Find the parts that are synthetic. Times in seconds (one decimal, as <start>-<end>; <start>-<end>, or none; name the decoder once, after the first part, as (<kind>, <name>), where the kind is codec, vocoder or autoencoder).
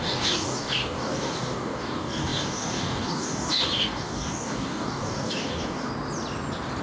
0.0-5.9 (codec, DAC)